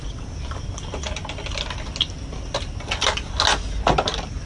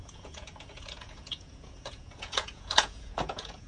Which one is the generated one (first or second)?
second